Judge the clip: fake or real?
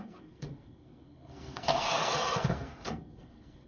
fake